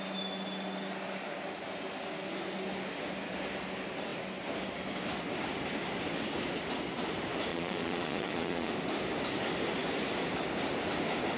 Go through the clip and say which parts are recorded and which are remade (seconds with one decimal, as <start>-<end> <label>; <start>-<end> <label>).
0.0-7.5 recorded; 7.5-8.7 remade; 8.7-11.4 recorded